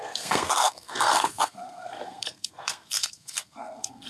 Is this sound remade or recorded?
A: remade